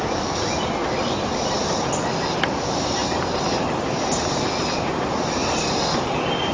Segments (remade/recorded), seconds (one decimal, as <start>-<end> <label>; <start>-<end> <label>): 0.0-0.8 recorded; 0.8-1.5 remade; 1.5-5.5 recorded; 5.5-6.5 remade